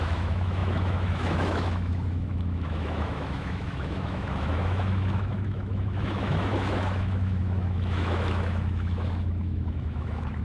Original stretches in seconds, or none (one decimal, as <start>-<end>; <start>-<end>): none